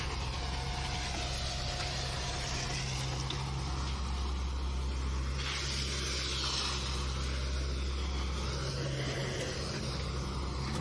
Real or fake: real